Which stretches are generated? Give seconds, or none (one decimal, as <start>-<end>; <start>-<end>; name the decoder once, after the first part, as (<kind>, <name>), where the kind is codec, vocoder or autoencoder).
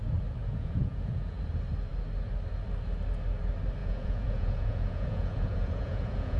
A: 0.4-1.4 (vocoder, Vocos); 3.8-6.4